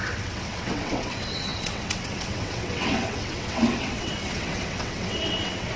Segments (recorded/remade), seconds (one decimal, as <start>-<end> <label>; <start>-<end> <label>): 0.0-5.8 remade